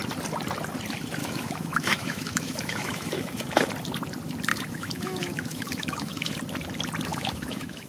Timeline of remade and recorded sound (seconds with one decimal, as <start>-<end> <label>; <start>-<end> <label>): 0.0-1.2 recorded; 1.2-3.7 remade; 3.7-4.5 recorded; 4.5-6.4 remade; 6.4-7.1 recorded; 7.1-7.9 remade